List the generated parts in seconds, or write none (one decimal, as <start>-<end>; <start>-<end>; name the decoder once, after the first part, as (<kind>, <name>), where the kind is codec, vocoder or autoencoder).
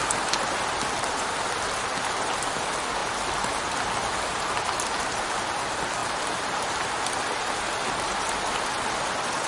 3.0-3.8 (vocoder, BigVGAN v2); 6.0-7.1